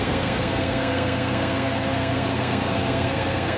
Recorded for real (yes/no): no